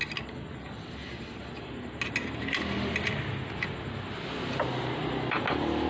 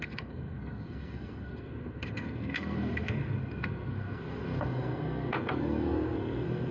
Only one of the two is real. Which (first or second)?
first